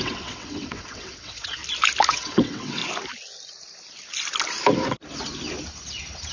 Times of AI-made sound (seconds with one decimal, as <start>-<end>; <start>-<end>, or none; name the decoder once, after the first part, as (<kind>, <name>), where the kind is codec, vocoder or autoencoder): 0.0-1.6 (vocoder, WaveNeXt); 2.1-2.8